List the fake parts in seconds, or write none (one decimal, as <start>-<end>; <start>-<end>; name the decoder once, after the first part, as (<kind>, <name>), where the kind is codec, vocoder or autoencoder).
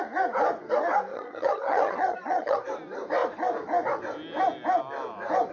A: 1.1-2.6 (vocoder, HiFi-GAN)